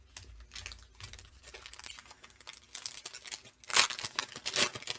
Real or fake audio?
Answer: real